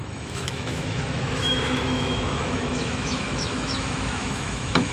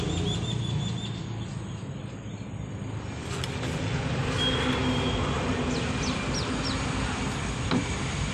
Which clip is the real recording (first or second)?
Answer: second